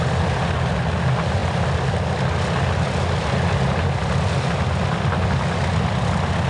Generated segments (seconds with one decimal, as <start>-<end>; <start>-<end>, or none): none